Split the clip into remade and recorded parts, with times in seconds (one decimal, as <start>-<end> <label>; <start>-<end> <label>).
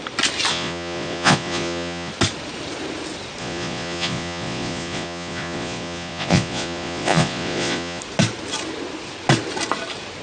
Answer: 0.0-0.5 recorded; 0.5-2.1 remade; 2.1-3.4 recorded; 3.4-8.0 remade; 8.0-10.2 recorded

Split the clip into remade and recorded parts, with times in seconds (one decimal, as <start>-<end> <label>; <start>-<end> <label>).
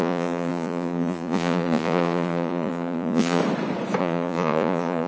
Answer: 0.0-3.4 remade; 3.4-4.0 recorded; 4.0-5.1 remade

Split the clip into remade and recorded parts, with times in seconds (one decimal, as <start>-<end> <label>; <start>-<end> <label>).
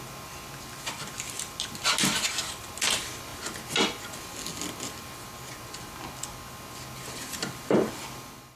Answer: 0.0-8.6 recorded